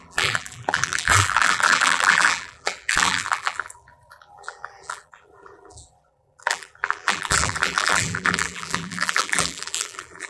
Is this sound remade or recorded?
remade